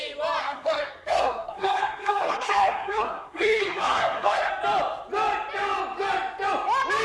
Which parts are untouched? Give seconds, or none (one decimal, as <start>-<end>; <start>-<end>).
0.0-0.4; 4.5-7.0